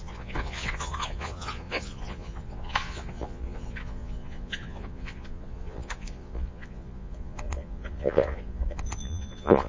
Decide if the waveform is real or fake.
fake